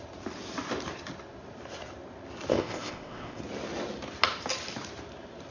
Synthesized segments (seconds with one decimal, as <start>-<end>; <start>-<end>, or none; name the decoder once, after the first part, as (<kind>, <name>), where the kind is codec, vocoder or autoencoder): 2.5-3.4 (codec, ZipCodec)